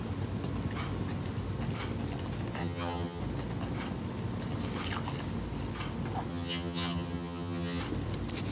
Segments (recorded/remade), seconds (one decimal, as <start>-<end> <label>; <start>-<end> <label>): 0.0-2.6 recorded; 2.6-3.2 remade; 3.2-6.3 recorded; 6.3-7.8 remade; 7.8-8.5 recorded